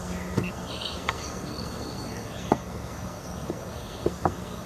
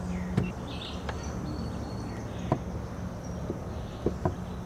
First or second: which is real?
second